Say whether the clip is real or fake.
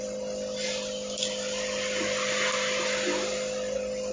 real